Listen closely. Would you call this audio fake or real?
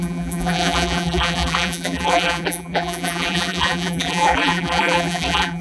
fake